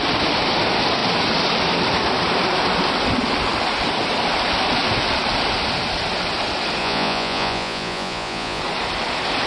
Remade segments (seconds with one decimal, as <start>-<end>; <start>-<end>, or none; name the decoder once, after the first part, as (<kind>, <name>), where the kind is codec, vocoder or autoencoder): 6.8-8.6 (vocoder, Vocos)